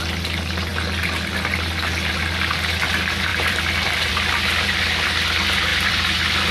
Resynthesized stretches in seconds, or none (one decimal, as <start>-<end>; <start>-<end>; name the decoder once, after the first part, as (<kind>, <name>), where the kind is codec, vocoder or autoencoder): 3.3-4.1 (vocoder, BigVGAN v2); 5.7-6.5